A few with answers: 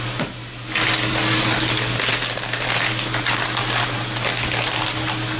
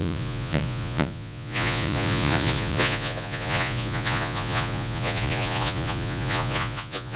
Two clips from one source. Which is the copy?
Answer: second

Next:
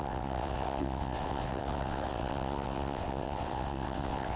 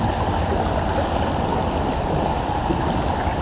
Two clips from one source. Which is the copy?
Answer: first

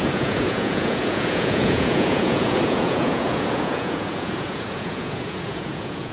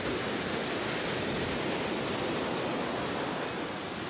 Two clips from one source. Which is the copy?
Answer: first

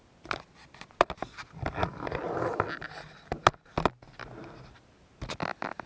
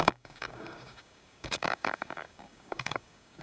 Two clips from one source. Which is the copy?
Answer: second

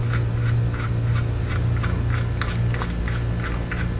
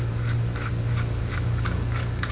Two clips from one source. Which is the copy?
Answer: second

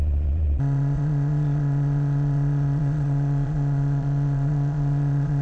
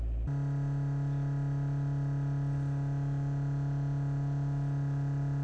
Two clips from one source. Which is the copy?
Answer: first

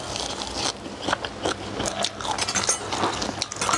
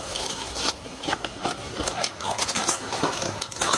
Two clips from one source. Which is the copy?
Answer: second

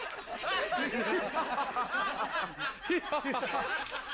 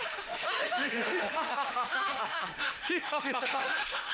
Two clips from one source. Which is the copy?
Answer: second